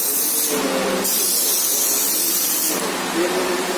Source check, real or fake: real